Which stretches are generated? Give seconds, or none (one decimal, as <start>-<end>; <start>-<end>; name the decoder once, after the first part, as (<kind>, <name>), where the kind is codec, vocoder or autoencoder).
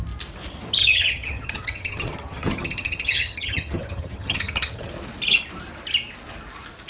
0.8-4.9 (vocoder, HiFi-GAN)